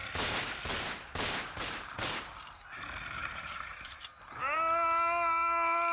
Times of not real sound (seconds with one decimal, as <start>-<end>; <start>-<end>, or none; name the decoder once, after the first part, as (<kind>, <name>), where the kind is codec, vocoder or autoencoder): 3.2-4.0 (vocoder, BigVGAN v2)